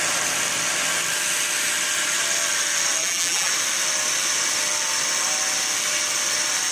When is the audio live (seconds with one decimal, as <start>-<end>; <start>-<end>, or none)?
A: 0.0-3.0; 3.5-6.7